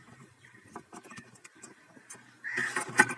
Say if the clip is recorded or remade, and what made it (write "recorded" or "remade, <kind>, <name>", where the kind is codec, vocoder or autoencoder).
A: remade, vocoder, BigVGAN v2